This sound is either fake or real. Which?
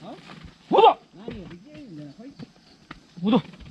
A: real